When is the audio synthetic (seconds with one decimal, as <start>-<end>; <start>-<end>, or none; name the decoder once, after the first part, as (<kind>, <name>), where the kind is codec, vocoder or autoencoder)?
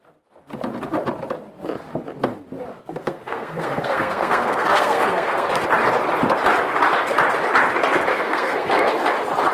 2.7-5.5 (codec, SNAC); 8.1-8.9